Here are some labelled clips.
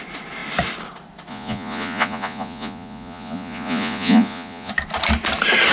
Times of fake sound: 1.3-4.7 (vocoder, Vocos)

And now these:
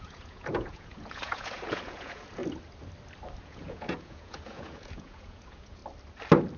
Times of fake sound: 0.0-2.4 (vocoder, Vocos); 3.4-5.8

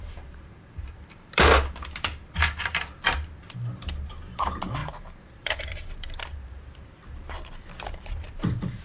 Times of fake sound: 0.0-8.8 (vocoder, BigVGAN v2)

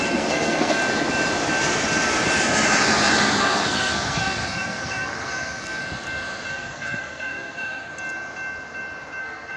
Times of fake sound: 0.0-0.8 (codec, SNAC); 3.4-5.8; 6.5-7.9; 9.2-9.6

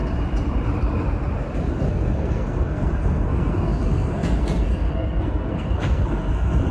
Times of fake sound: 1.7-6.7 (codec, SNAC)